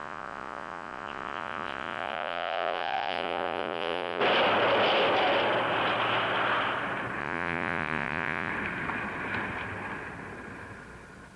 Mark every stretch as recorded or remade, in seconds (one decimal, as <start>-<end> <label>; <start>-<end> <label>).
0.0-4.2 remade; 4.2-7.2 recorded; 7.2-8.5 remade; 8.5-11.4 recorded